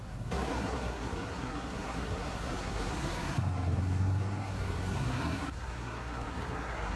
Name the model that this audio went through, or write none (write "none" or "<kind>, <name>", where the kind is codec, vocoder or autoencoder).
codec, SNAC